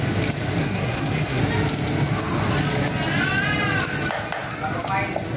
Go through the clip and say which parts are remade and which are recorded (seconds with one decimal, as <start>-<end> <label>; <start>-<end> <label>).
0.0-0.6 recorded; 0.6-1.4 remade; 1.4-5.4 recorded